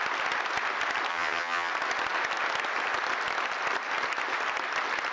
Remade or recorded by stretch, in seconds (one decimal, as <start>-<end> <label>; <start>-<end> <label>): 0.0-1.1 recorded; 1.1-1.7 remade; 1.7-5.1 recorded